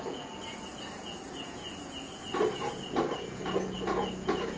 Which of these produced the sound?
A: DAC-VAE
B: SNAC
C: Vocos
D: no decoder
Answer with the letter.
C